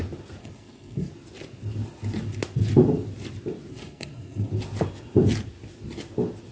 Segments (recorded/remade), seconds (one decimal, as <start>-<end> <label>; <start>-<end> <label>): 0.0-0.4 recorded; 0.4-1.1 remade; 1.1-3.7 recorded; 3.7-4.5 remade; 4.5-6.5 recorded